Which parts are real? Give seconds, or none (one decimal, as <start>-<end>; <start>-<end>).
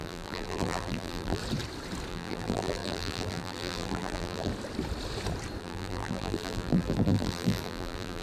1.4-2.1; 4.5-5.6